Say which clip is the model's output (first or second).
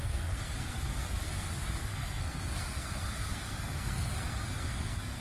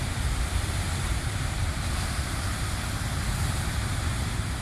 first